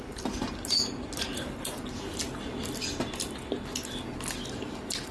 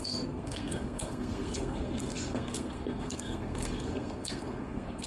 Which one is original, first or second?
first